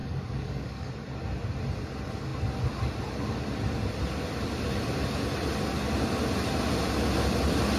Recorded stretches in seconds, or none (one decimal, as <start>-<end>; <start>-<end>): 0.9-7.8